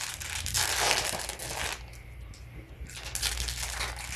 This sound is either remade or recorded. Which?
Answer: recorded